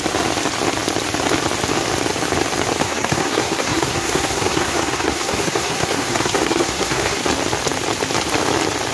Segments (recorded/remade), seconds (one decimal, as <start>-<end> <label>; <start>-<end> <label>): 0.0-2.8 recorded; 2.8-7.2 remade; 7.2-8.9 recorded